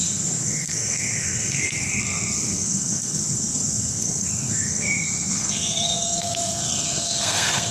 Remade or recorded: remade